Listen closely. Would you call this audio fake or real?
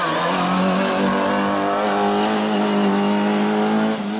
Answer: real